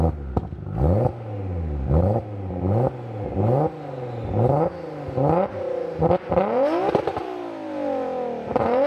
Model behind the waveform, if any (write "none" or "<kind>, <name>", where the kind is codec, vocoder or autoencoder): none